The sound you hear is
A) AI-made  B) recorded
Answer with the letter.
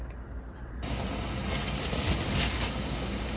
B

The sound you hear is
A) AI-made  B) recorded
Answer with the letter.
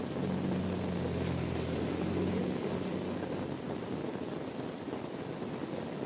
B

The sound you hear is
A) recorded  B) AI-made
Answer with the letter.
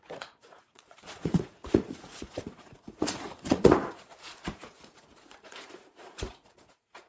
B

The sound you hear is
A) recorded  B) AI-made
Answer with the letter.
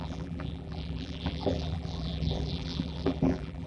B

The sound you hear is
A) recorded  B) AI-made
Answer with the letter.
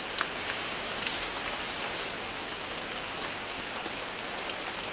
A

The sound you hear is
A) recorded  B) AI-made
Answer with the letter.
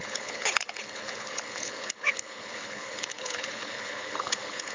B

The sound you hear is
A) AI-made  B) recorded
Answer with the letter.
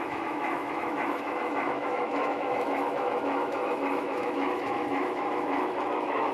A